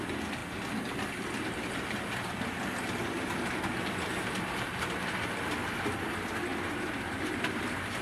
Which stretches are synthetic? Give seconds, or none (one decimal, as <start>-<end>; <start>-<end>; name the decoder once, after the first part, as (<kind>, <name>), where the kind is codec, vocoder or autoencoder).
none